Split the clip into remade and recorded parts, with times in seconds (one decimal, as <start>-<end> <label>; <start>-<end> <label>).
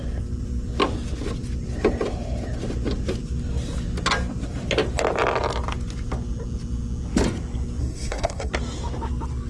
0.0-7.8 recorded; 7.8-8.5 remade; 8.5-9.5 recorded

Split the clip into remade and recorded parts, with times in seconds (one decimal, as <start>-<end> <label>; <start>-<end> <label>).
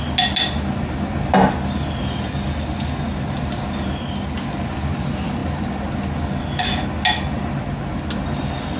0.0-8.8 recorded